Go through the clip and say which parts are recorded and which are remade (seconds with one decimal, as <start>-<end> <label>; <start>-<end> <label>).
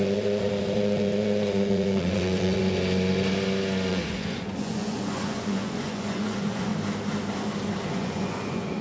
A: 0.0-2.6 remade; 2.6-3.9 recorded; 3.9-6.7 remade; 6.7-7.9 recorded; 7.9-8.8 remade